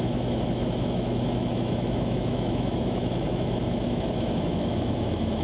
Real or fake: fake